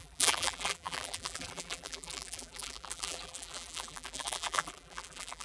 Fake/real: fake